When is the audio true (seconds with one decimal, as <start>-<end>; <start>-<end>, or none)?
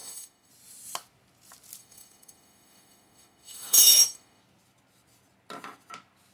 0.5-1.8; 4.4-6.3